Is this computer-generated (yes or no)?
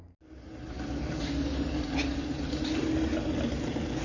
no